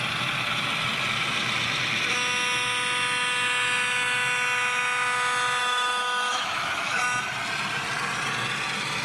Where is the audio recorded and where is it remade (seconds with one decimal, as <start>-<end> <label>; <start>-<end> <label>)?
0.0-5.6 recorded; 5.6-7.0 remade; 7.0-9.0 recorded